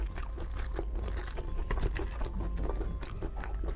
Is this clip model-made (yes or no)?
no